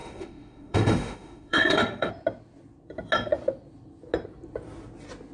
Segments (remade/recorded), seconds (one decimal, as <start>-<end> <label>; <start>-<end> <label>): 0.0-2.1 remade; 2.1-5.3 recorded